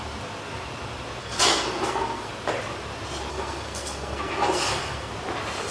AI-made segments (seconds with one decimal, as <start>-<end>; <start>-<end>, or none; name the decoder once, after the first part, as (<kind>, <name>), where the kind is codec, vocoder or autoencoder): 1.2-2.3 (codec, SNAC); 3.3-5.1